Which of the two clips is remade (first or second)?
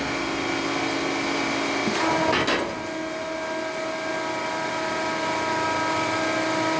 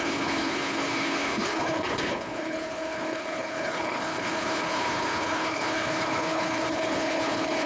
second